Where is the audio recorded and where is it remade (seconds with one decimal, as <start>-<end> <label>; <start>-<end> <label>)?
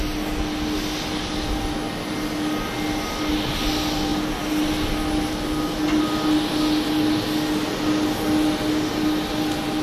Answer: 0.0-9.8 recorded